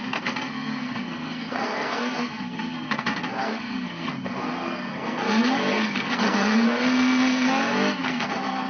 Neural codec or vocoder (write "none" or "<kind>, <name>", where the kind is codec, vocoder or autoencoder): codec, SNAC